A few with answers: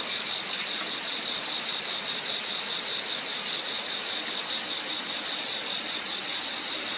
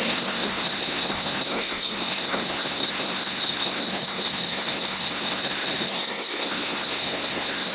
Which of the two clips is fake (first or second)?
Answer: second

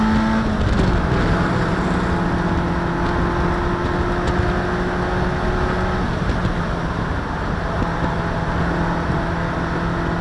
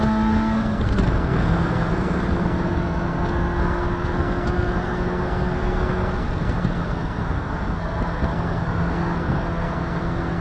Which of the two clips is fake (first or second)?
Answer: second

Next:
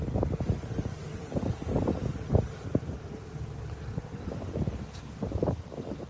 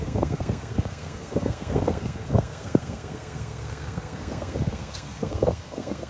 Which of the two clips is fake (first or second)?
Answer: second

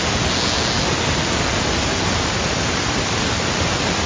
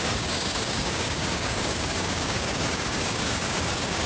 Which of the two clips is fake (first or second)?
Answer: second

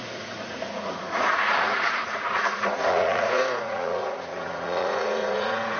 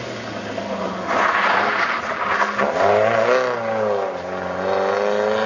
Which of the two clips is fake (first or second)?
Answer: first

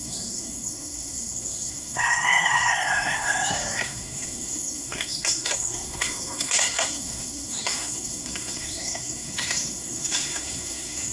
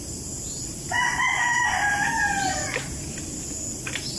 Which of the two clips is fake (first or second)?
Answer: first